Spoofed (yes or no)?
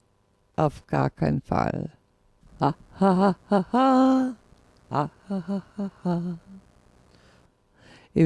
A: no